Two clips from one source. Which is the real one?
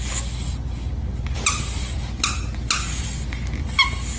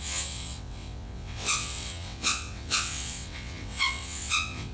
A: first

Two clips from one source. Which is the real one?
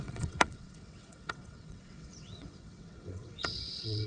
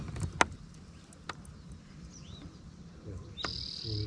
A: second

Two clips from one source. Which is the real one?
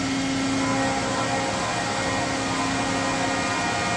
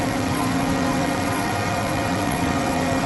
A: first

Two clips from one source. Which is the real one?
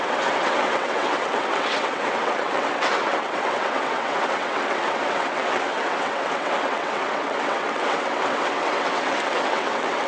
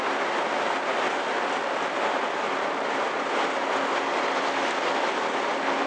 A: second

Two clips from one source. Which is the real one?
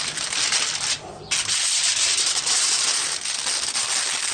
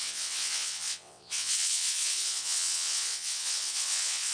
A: first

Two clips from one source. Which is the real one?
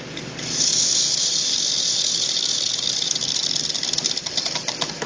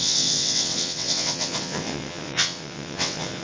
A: first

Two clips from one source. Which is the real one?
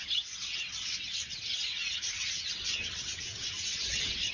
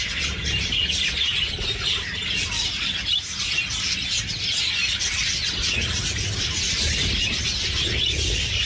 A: second